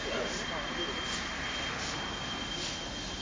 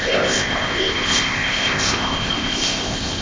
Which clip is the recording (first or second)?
first